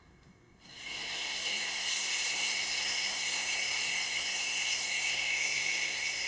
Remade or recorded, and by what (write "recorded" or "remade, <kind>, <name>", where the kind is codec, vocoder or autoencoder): remade, codec, SNAC